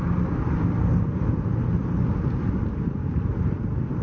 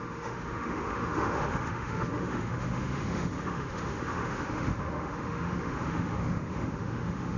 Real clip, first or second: first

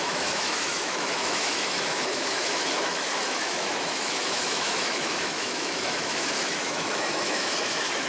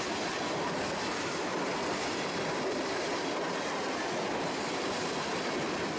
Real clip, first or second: second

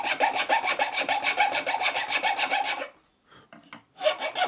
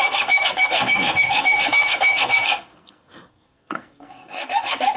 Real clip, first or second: first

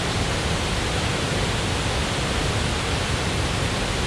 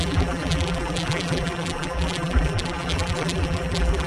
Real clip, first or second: first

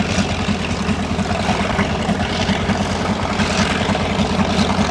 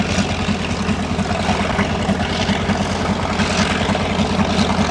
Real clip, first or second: second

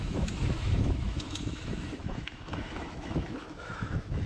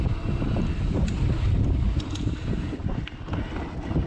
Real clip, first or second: second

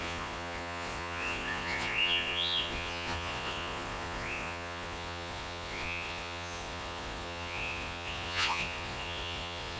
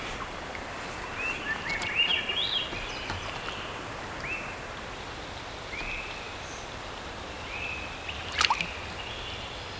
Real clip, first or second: second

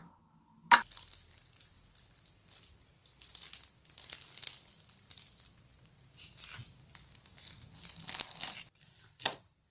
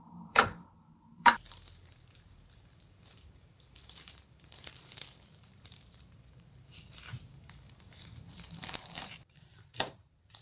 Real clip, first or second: first